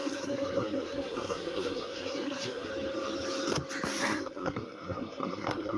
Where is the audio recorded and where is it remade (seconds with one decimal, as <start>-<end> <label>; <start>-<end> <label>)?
0.0-2.7 remade; 2.7-4.0 recorded; 4.0-5.8 remade